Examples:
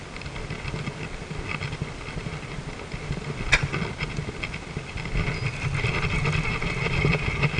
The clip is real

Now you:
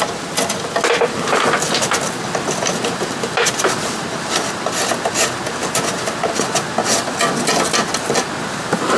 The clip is real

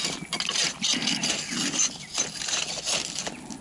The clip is real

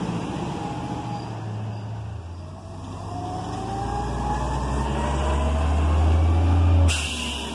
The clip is real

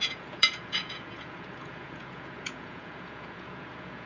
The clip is fake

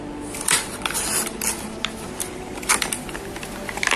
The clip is real